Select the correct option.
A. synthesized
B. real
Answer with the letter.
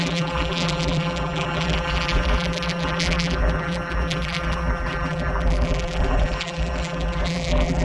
A